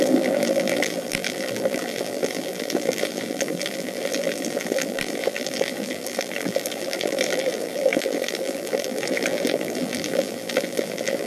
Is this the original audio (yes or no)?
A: no